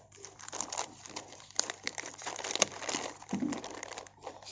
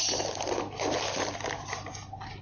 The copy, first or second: first